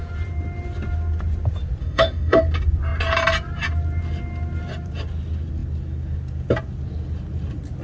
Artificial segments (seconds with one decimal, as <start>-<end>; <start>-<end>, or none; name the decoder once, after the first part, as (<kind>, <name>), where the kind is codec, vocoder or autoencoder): 1.8-2.4 (autoencoder, DAC-VAE)